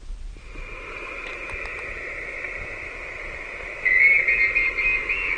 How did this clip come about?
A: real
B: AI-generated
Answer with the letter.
A